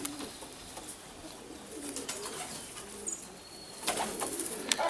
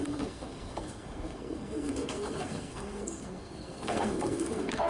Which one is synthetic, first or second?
second